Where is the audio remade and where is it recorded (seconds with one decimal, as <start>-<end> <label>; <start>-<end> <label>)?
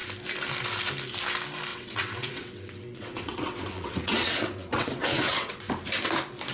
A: 0.0-1.7 recorded; 1.7-5.6 remade; 5.6-6.5 recorded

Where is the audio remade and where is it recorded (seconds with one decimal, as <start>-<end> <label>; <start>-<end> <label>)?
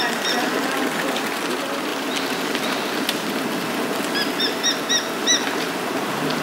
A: 0.0-6.4 recorded